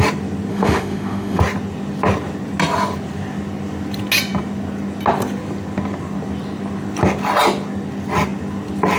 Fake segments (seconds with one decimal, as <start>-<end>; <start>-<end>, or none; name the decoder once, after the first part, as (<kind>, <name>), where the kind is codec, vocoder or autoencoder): 0.5-1.4 (autoencoder, DAC-VAE)